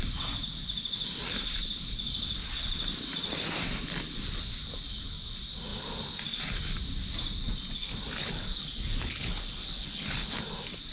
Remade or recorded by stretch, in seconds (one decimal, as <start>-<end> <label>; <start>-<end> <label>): 0.0-8.2 recorded; 8.2-10.5 remade; 10.5-10.9 recorded